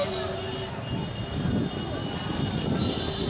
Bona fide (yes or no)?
yes